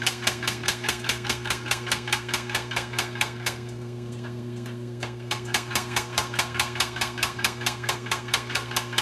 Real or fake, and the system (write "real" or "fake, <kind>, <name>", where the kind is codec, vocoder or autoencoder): fake, codec, SNAC